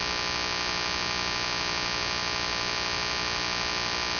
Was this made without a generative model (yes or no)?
yes